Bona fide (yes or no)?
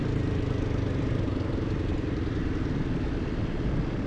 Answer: yes